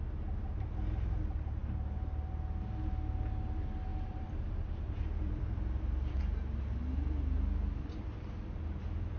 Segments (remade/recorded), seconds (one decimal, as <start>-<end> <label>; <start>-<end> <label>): 0.0-3.9 recorded; 3.9-6.2 remade; 6.2-9.2 recorded